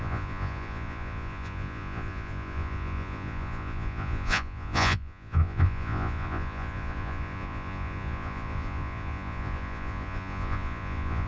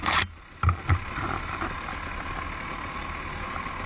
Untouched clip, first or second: second